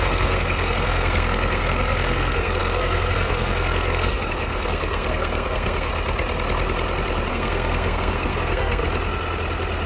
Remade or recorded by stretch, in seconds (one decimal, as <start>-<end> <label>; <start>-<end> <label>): 0.0-5.9 remade; 5.9-7.3 recorded; 7.3-8.8 remade; 8.8-9.9 recorded